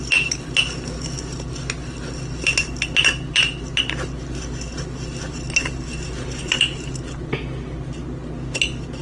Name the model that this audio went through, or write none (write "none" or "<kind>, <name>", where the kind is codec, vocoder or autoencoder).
none